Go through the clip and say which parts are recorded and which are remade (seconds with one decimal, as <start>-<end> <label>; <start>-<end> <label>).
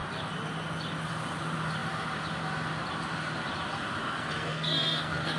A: 0.0-4.0 recorded; 4.0-5.4 remade